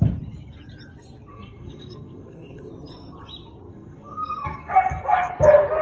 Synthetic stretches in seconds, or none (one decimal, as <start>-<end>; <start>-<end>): 1.3-2.7; 3.7-5.3